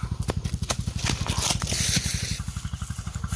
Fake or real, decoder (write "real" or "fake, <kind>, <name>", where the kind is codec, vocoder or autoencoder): real